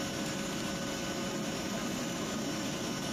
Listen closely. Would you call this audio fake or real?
real